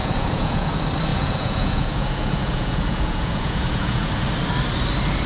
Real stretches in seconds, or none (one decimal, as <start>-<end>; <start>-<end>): 0.7-1.1; 4.1-5.3